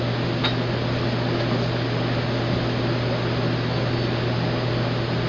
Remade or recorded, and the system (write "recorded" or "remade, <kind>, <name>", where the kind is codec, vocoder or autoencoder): recorded